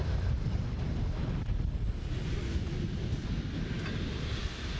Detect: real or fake real